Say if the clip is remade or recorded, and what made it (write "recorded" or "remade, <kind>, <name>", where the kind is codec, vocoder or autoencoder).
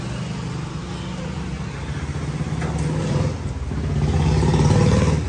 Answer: recorded